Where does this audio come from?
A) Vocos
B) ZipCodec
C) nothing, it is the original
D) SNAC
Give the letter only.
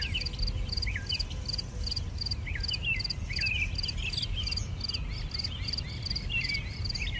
C